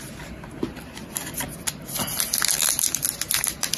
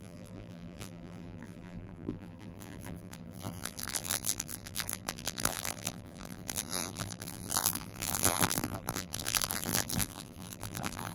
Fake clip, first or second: second